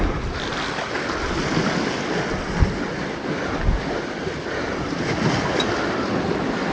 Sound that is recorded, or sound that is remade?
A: recorded